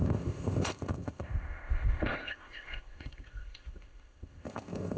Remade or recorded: remade